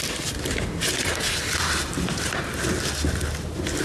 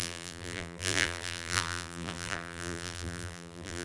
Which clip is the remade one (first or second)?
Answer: second